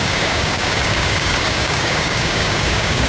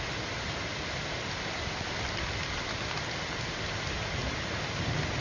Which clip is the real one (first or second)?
second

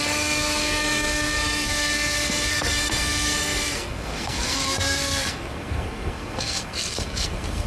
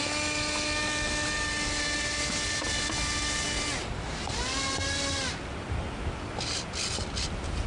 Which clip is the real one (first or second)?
second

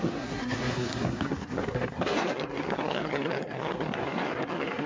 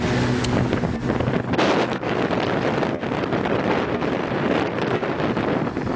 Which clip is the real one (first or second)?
second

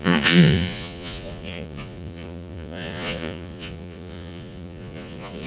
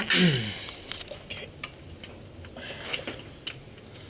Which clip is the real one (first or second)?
second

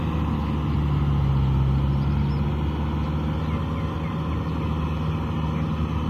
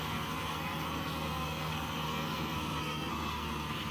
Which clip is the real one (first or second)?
first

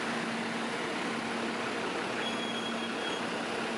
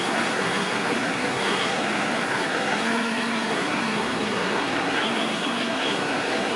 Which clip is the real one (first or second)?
first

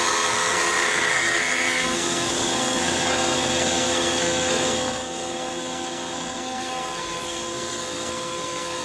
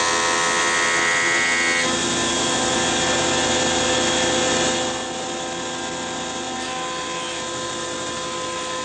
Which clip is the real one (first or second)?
second